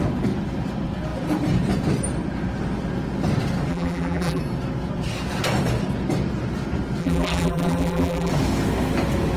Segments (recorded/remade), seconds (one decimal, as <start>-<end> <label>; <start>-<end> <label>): 0.0-3.7 recorded; 3.7-4.4 remade; 4.4-7.0 recorded; 7.0-8.3 remade; 8.3-9.4 recorded